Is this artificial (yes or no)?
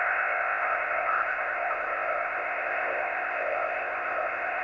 yes